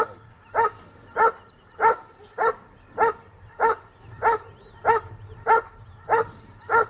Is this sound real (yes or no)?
yes